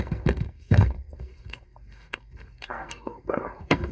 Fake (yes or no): yes